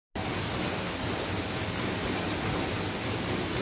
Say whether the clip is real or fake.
real